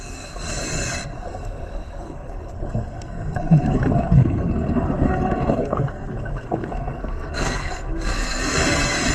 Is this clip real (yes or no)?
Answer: no